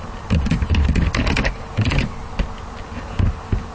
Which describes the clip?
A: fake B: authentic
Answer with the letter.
B